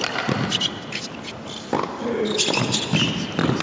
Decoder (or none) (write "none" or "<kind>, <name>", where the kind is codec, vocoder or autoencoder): none